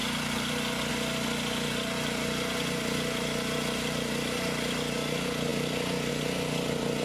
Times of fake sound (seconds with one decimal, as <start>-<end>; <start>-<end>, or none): none

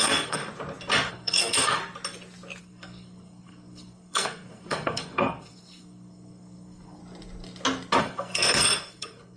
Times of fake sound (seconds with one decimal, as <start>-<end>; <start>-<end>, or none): 0.0-0.4; 1.1-1.8; 2.6-7.0; 8.0-9.4

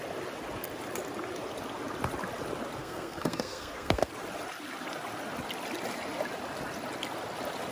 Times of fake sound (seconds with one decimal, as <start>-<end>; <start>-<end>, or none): 2.8-4.1

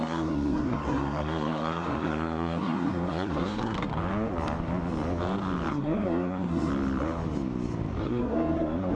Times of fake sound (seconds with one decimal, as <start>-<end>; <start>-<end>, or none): 0.0-3.9; 5.7-6.7; 8.0-9.0

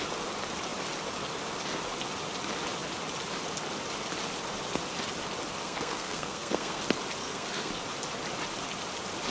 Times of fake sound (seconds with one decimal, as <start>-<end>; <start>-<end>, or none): 5.6-6.8; 7.2-7.7

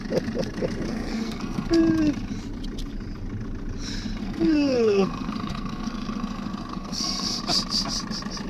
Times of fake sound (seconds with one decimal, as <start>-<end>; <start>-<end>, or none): 0.9-1.8; 4.2-7.4

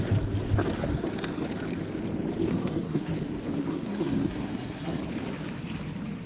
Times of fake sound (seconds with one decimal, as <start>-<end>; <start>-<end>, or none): 2.5-3.1; 3.7-5.0

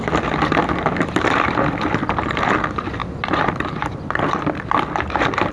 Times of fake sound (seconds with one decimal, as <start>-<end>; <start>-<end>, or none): none